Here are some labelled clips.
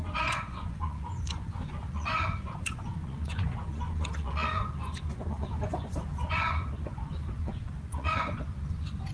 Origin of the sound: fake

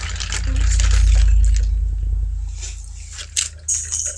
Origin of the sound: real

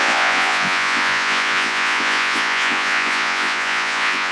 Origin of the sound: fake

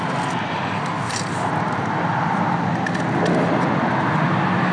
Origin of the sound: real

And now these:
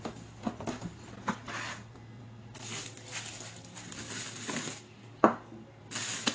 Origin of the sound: real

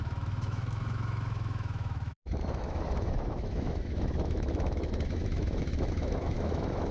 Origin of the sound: fake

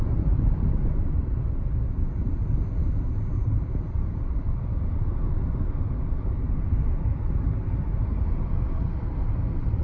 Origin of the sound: fake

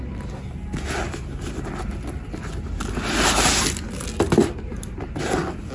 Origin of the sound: real